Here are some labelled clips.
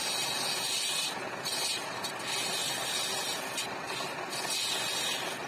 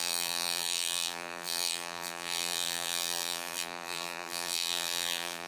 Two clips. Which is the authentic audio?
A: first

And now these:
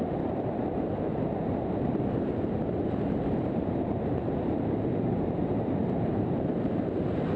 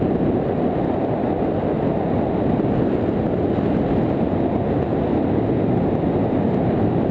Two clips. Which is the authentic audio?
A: second